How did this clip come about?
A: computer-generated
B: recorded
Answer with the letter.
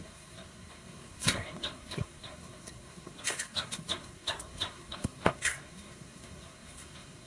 A